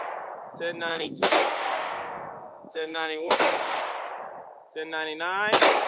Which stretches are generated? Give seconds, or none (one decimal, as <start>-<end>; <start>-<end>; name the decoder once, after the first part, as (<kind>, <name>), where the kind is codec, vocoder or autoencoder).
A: 0.9-3.8 (autoencoder, DAC-VAE)